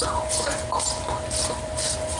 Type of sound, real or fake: real